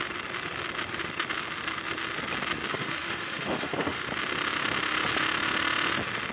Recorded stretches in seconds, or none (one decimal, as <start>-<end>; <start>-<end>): 0.0-2.7; 4.0-6.3